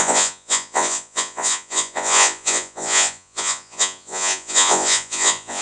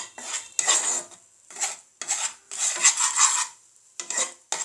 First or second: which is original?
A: second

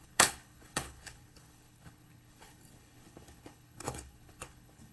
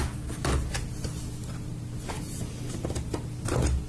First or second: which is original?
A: second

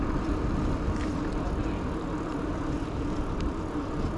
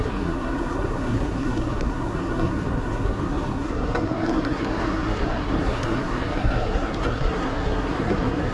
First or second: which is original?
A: first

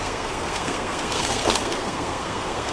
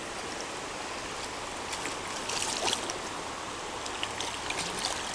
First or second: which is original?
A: second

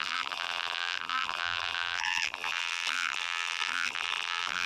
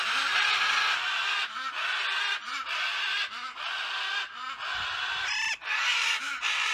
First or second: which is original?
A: second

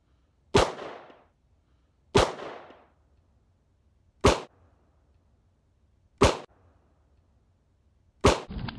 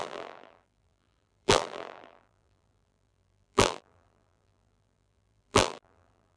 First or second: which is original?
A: first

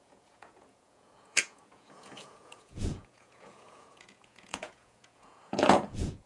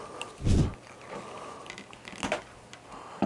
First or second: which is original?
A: second